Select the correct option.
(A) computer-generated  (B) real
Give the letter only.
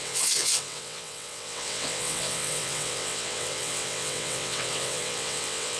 A